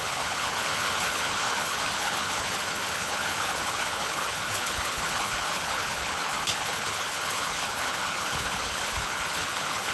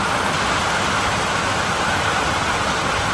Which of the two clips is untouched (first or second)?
second